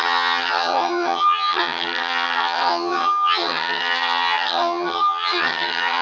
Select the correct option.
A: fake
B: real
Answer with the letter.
A